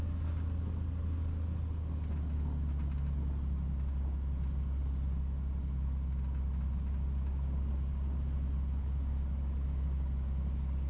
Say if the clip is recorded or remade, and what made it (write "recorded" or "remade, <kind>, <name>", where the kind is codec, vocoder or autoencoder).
recorded